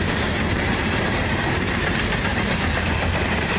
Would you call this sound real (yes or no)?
no